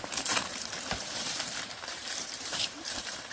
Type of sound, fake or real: fake